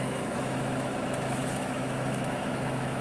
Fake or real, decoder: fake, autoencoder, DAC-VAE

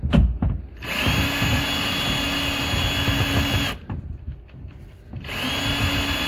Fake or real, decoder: real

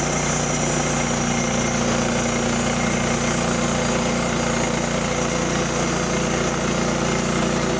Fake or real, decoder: real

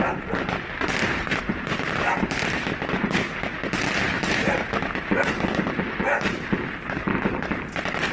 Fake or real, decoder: real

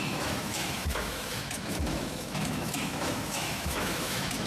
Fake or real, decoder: fake, autoencoder, DAC-VAE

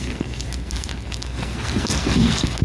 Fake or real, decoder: fake, codec, SNAC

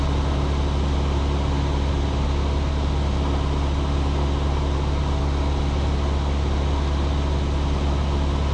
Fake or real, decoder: real